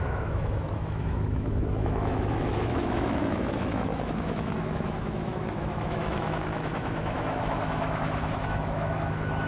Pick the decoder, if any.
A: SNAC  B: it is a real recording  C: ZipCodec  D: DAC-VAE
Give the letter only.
D